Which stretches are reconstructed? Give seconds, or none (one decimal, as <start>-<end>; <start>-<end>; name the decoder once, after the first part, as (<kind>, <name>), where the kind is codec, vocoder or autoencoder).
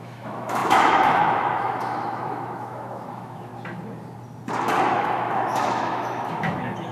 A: 0.0-3.5 (autoencoder, DAC-VAE); 4.9-6.9